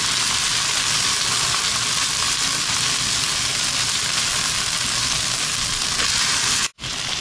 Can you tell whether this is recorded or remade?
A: recorded